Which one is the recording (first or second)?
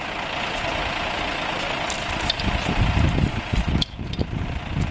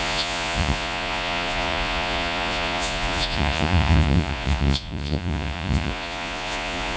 first